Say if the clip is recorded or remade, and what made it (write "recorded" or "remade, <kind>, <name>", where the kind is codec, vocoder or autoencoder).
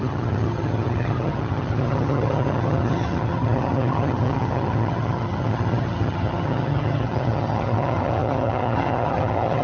remade, vocoder, HiFi-GAN